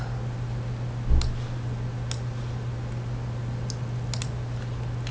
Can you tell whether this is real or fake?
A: real